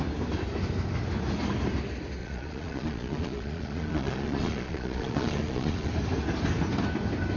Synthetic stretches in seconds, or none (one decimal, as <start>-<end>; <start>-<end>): 2.2-5.9